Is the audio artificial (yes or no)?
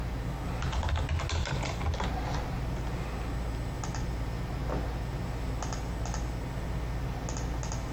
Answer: no